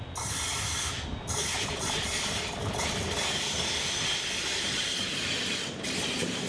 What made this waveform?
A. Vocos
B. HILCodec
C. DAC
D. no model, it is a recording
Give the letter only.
D